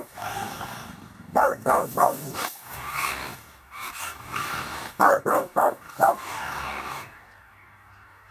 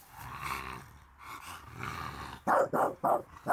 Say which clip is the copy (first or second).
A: first